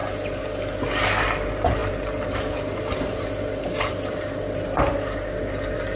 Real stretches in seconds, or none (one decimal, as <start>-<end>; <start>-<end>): 0.0-6.0